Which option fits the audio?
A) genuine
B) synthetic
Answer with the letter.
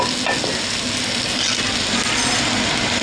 A